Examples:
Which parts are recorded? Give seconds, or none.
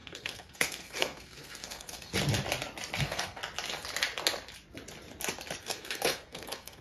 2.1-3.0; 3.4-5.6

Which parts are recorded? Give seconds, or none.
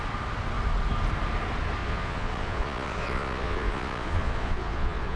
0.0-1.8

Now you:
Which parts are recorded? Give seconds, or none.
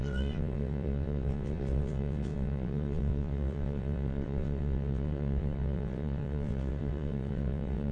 none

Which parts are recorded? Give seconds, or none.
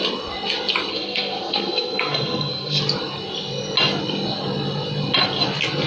0.0-0.9; 2.8-5.9